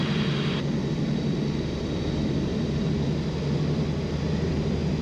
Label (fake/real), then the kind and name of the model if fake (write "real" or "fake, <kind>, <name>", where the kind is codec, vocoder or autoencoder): real